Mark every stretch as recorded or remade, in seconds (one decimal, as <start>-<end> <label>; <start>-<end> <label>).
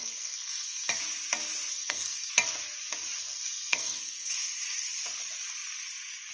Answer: 0.0-1.0 remade; 1.0-1.7 recorded; 1.7-2.3 remade; 2.3-3.2 recorded; 3.2-4.3 remade; 4.3-6.3 recorded